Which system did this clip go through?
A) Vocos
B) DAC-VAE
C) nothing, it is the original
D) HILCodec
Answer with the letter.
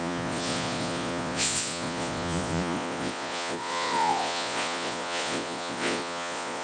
A